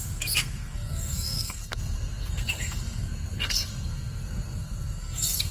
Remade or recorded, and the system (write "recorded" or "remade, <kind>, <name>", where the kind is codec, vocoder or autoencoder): remade, codec, SNAC